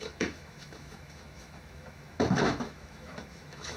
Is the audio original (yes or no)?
no